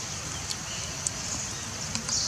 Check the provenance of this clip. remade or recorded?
recorded